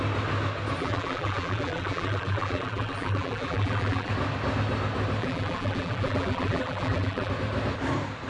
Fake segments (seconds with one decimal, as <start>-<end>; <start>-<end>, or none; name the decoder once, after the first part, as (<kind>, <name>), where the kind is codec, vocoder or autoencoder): 0.8-4.1 (vocoder, BigVGAN v2); 5.2-7.3